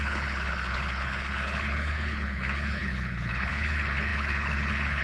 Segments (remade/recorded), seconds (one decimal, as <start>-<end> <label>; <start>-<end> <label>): 0.0-5.0 remade